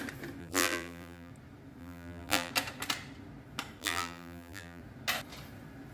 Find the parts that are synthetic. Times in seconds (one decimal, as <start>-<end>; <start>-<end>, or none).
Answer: 0.4-1.3; 1.8-2.5; 3.8-4.8